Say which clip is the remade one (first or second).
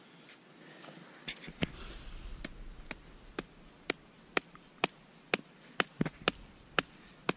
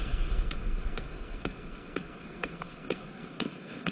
second